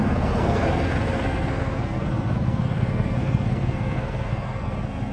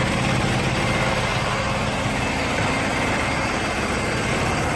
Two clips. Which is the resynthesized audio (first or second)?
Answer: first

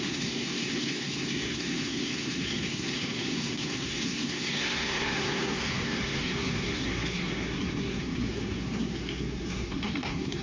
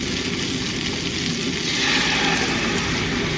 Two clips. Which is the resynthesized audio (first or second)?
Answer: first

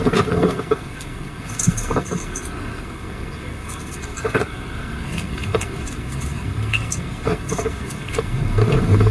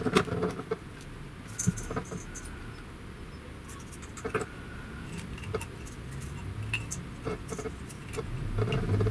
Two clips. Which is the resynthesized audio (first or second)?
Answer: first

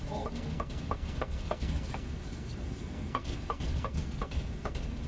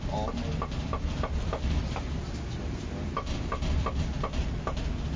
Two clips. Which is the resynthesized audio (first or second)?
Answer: first